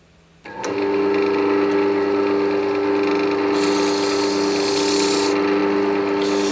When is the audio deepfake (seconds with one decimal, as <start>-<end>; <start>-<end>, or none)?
none